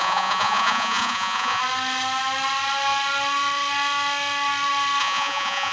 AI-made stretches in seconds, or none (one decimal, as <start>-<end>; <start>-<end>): 0.0-1.6; 5.0-5.7